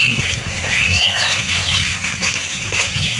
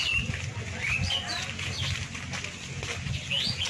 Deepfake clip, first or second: first